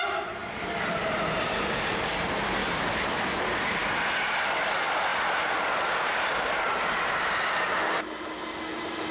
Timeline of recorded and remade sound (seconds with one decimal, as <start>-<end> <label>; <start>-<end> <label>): 0.0-0.4 recorded; 0.4-1.0 remade; 1.0-2.6 recorded; 2.6-3.4 remade; 3.4-9.1 recorded